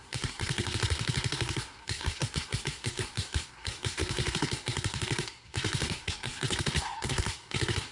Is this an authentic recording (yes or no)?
no